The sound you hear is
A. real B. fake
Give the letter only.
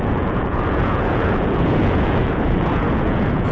B